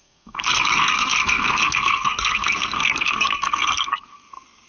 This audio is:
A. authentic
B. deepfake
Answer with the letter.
B